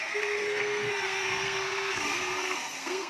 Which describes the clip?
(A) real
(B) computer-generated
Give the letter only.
B